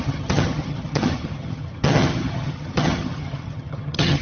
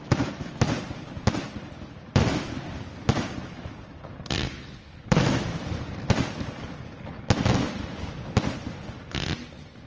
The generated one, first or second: first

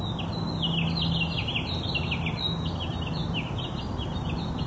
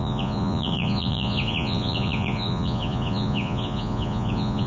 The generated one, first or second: second